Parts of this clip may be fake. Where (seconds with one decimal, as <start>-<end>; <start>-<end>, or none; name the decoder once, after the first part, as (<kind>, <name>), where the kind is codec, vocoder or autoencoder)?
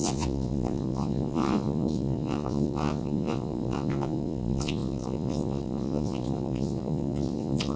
0.0-7.8 (vocoder, Vocos)